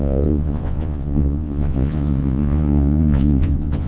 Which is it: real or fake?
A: fake